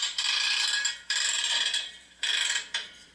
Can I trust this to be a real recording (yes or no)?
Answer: no